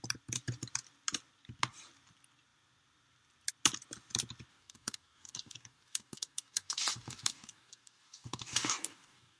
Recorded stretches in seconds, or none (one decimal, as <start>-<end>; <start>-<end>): 0.0-4.5